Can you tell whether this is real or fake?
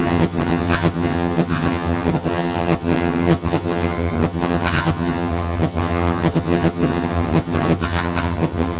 fake